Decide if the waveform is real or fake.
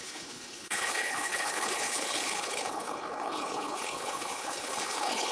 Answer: fake